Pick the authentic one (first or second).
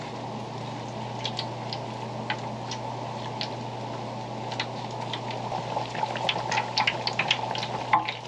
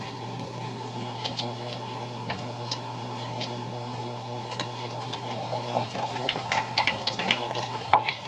first